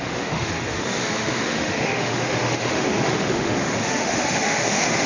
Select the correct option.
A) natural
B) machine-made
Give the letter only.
B